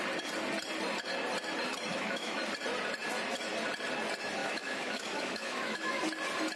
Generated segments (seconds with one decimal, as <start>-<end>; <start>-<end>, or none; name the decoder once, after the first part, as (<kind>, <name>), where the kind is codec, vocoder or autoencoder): 1.9-2.4 (autoencoder, DAC-VAE); 4.4-6.0